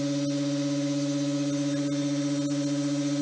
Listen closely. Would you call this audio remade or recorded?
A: recorded